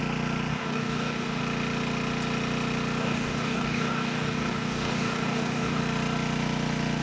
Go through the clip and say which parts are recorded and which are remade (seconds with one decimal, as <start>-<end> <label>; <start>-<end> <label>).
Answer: 0.0-0.5 recorded; 0.5-1.4 remade; 1.4-3.0 recorded; 3.0-5.8 remade; 5.8-7.0 recorded